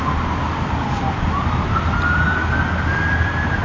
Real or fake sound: real